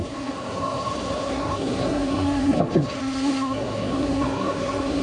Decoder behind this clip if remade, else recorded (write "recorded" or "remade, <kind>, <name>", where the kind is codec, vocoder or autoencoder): remade, codec, SNAC